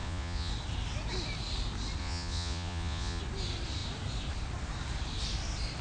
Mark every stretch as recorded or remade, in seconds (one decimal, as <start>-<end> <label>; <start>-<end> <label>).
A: 0.0-0.5 remade; 0.5-2.0 recorded; 2.0-3.2 remade; 3.2-5.8 recorded